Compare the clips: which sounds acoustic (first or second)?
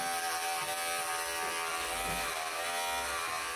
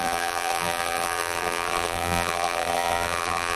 first